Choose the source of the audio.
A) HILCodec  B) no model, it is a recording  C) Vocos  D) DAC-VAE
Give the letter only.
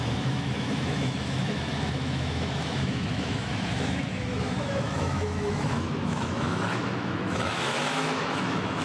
D